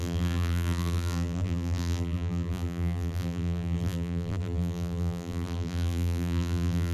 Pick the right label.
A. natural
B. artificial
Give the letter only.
B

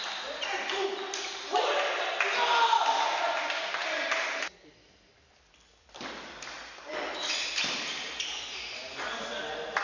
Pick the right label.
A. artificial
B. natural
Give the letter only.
B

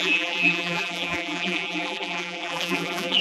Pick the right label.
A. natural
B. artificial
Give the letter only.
B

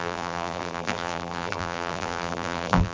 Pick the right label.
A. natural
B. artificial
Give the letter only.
B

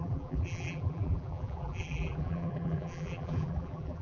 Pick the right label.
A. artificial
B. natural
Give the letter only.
A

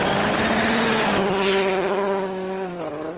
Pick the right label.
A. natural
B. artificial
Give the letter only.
A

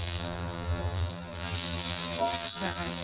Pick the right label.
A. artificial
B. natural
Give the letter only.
A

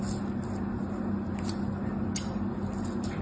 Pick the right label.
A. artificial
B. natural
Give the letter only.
B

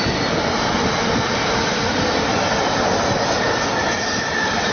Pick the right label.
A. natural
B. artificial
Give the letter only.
A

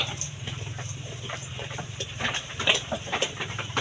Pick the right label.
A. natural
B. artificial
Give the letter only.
B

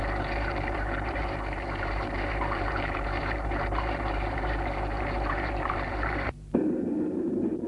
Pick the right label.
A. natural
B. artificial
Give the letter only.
B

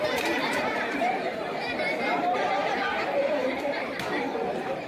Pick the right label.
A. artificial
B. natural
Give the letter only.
A